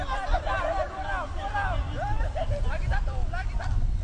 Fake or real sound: fake